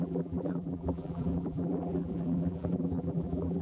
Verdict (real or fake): fake